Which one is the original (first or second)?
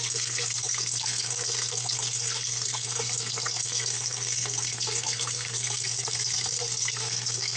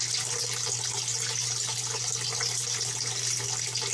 second